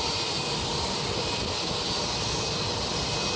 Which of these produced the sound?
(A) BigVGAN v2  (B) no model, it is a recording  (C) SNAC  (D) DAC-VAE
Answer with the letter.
B